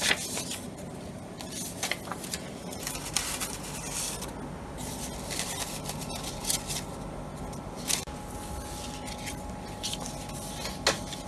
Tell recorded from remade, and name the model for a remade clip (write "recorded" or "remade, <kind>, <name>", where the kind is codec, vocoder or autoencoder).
recorded